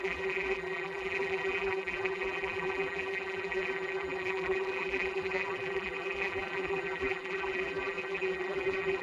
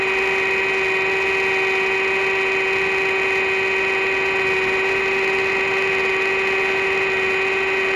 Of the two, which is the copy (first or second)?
first